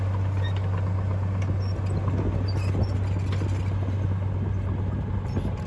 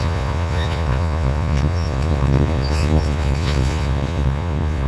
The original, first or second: first